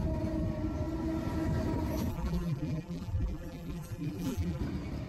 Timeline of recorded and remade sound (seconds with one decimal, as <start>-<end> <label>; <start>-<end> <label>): 0.0-2.1 recorded; 2.1-4.6 remade; 4.6-5.1 recorded